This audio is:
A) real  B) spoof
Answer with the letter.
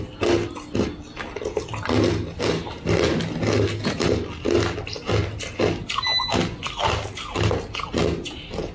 A